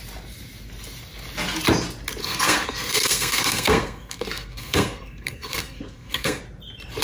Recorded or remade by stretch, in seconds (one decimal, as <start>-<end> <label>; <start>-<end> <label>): 0.0-2.2 recorded; 2.2-6.4 remade; 6.4-7.0 recorded